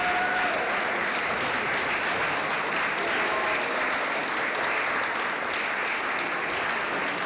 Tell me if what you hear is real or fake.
real